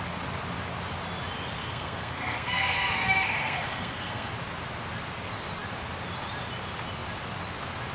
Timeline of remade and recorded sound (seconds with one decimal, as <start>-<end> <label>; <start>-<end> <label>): 0.0-1.6 recorded; 1.6-4.3 remade; 4.3-7.9 recorded